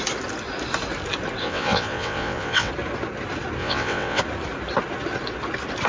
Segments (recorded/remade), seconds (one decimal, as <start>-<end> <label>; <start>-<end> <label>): 0.0-1.4 recorded; 1.4-2.7 remade; 2.7-3.6 recorded; 3.6-4.2 remade; 4.2-5.9 recorded